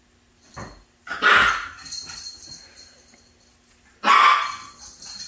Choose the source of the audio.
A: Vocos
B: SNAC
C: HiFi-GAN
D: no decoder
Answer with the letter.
D